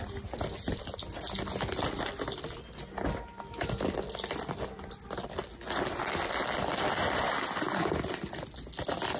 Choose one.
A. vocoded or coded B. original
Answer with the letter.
B